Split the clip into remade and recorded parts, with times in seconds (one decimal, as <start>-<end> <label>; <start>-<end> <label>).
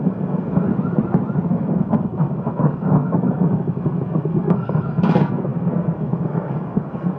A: 0.0-0.7 remade; 0.7-1.5 recorded; 1.5-7.2 remade